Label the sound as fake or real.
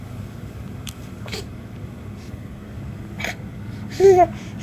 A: fake